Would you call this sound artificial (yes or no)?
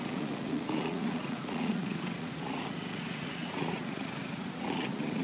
yes